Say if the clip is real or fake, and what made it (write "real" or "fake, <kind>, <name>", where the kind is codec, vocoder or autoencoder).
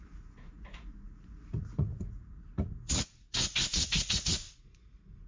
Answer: fake, vocoder, Vocos